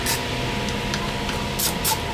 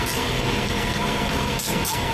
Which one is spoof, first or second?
second